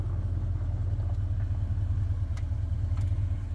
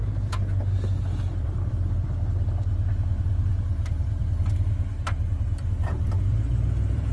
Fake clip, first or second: second